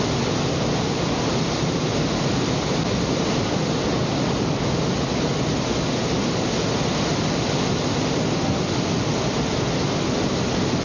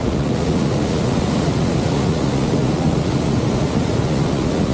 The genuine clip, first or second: first